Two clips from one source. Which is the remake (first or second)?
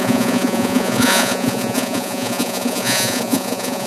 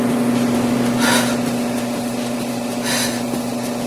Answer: first